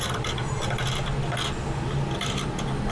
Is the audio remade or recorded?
recorded